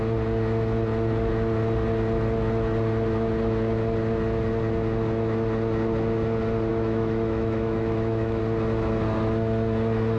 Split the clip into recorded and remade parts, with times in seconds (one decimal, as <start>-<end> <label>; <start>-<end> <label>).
0.0-6.7 recorded; 6.7-8.4 remade; 8.4-10.2 recorded